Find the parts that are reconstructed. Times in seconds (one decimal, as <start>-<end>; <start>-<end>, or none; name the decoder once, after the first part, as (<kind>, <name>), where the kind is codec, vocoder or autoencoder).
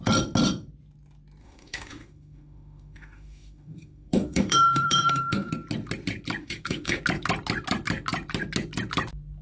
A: 1.4-5.5 (autoencoder, DAC-VAE); 6.4-7.0